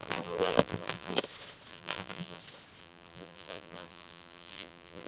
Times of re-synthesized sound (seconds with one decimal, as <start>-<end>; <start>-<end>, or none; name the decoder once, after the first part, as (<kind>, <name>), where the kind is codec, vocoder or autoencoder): 0.0-1.2 (vocoder, BigVGAN v2); 1.7-2.4; 2.8-5.1